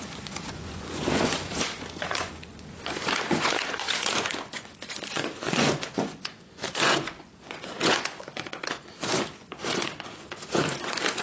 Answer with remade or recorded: remade